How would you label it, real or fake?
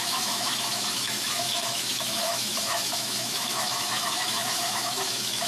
fake